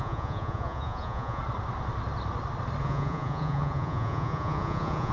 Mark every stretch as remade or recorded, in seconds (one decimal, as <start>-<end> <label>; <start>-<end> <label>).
0.0-1.4 remade; 1.4-2.8 recorded; 2.8-5.1 remade